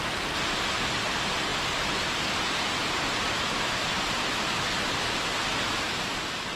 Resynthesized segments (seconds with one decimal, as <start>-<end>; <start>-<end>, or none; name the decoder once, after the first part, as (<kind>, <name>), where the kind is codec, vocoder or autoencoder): none